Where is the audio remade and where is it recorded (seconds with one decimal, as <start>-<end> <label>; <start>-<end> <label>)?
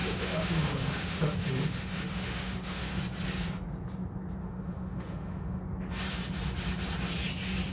0.0-3.0 remade; 3.0-4.4 recorded; 4.4-5.6 remade; 5.6-7.7 recorded